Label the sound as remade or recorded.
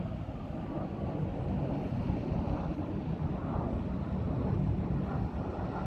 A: remade